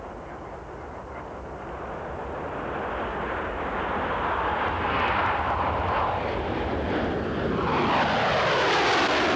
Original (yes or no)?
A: yes